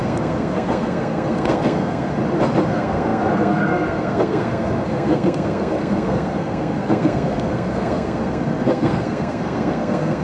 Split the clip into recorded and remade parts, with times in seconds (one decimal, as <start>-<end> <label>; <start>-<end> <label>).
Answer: 0.0-2.1 remade; 2.1-2.7 recorded; 2.7-10.2 remade